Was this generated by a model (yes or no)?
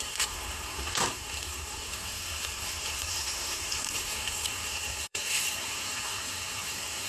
yes